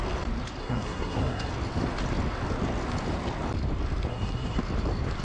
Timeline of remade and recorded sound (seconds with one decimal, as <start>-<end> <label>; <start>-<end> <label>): 0.0-0.6 recorded; 0.6-1.5 remade; 1.5-4.1 recorded; 4.1-4.6 remade; 4.6-5.2 recorded